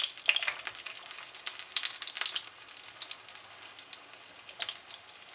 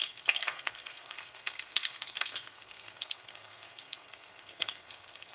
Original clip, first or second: first